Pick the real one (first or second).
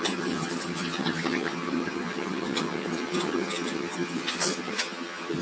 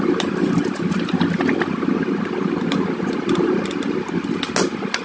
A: second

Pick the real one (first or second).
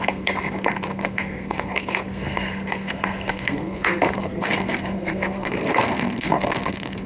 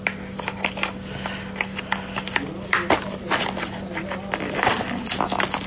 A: second